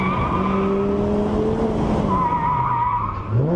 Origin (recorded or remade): recorded